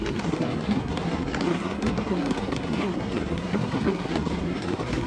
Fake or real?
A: fake